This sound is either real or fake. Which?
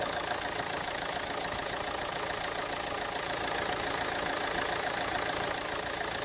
real